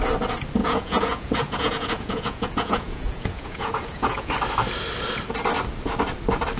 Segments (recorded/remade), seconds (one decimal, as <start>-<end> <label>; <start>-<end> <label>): 0.0-0.6 recorded; 0.6-4.3 remade; 4.3-6.6 recorded